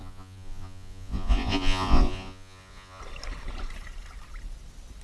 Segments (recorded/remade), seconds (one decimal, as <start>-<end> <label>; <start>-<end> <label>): 0.0-3.0 remade; 3.0-5.0 recorded